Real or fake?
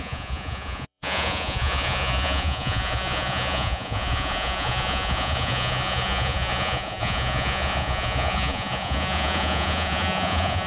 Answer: fake